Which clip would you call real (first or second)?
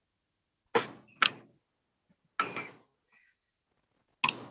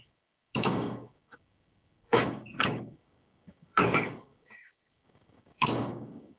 first